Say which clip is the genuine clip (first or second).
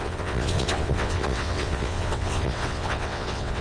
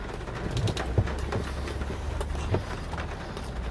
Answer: second